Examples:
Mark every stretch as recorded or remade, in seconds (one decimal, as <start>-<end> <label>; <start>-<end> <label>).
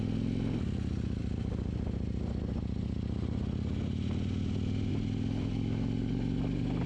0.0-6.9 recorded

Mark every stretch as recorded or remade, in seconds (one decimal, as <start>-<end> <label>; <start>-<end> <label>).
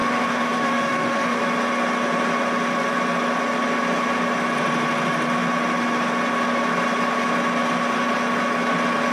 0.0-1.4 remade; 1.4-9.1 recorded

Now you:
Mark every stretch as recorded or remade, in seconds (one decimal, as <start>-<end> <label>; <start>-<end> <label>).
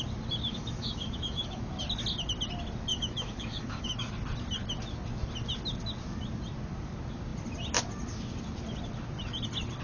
0.0-0.5 recorded; 0.5-1.6 remade; 1.6-2.9 recorded; 2.9-4.1 remade; 4.1-9.8 recorded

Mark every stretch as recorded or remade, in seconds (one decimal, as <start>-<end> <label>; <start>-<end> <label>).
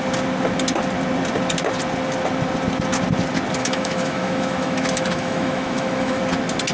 0.0-3.6 recorded; 3.6-6.2 remade; 6.2-6.7 recorded